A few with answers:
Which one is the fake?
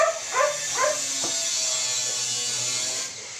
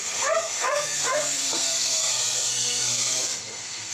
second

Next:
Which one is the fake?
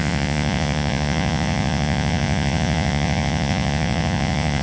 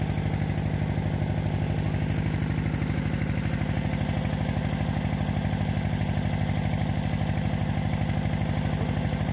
first